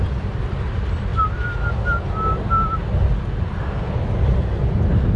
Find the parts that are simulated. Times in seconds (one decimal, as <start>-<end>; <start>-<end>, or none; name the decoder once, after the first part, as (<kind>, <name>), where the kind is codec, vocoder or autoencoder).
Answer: none